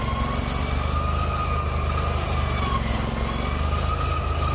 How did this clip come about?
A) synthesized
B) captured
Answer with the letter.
B